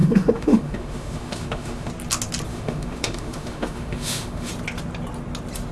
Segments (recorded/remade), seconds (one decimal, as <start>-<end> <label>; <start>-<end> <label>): 0.0-1.9 remade; 1.9-2.5 recorded; 2.5-4.5 remade; 4.5-5.7 recorded